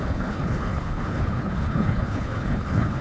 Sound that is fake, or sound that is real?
fake